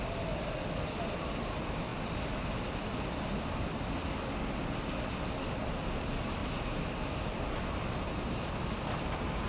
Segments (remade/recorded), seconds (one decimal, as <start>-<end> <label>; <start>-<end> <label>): 0.0-9.5 recorded